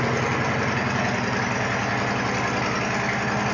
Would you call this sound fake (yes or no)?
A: no